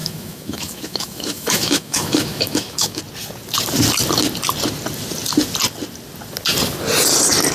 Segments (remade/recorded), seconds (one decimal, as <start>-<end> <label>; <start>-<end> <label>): 0.0-3.0 remade; 3.0-7.5 recorded

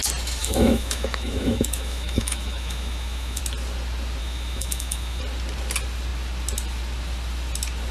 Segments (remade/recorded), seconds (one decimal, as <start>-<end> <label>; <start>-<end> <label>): 0.0-0.4 recorded; 0.4-3.4 remade; 3.4-4.2 recorded; 4.2-5.2 remade; 5.2-7.9 recorded

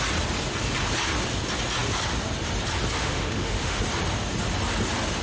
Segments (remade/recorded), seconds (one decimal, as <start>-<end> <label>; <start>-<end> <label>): 0.0-3.0 recorded; 3.0-3.8 remade; 3.8-5.2 recorded

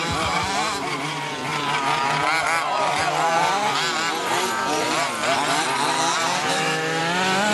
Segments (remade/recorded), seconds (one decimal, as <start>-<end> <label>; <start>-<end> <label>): 0.0-6.4 recorded; 6.4-7.0 remade; 7.0-7.5 recorded

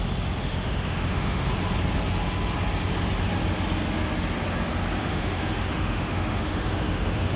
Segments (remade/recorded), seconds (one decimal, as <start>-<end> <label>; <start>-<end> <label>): 0.0-0.4 recorded; 0.4-1.5 remade; 1.5-5.0 recorded; 5.0-7.4 remade